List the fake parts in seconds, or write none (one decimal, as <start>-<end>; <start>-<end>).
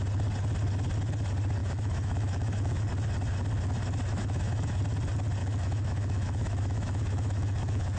1.6-2.9; 4.1-4.8; 5.4-8.0